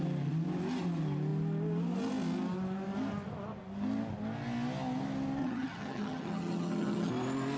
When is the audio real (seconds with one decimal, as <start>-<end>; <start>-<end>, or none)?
0.0-5.4; 7.1-7.6